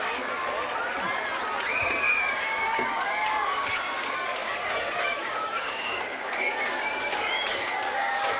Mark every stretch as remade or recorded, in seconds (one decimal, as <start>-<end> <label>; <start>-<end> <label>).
0.0-0.4 remade; 0.4-1.7 recorded; 1.7-8.4 remade